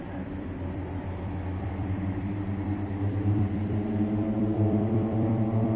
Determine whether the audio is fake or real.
fake